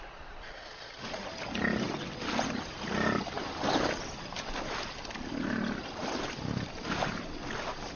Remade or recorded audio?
recorded